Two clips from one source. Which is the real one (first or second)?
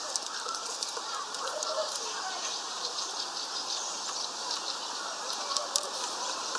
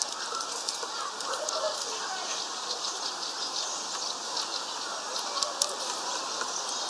second